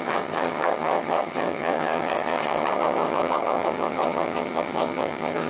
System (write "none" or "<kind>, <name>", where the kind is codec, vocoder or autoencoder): vocoder, HiFi-GAN